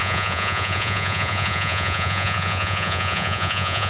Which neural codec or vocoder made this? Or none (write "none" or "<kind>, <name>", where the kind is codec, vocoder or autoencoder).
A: vocoder, Vocos